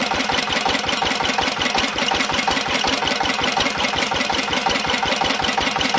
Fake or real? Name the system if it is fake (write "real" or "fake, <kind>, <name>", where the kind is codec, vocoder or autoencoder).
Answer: real